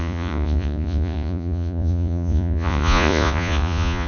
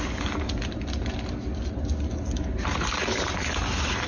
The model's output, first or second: first